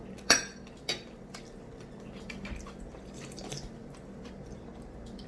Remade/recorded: remade